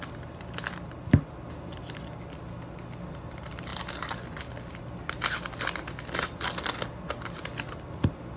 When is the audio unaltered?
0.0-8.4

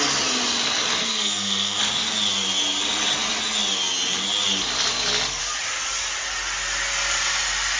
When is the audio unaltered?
0.0-1.0; 1.8-7.8

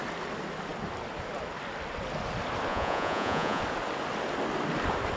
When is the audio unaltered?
0.0-2.7; 3.6-5.2